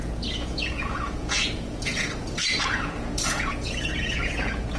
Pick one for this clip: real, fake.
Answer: fake